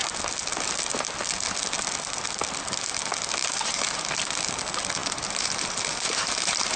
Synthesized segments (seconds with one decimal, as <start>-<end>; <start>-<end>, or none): 3.4-4.0; 5.0-6.8